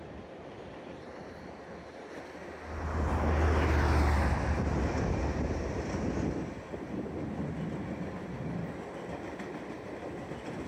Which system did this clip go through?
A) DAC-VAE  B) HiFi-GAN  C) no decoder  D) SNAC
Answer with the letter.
C